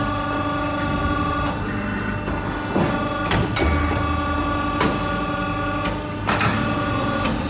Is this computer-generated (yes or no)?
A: no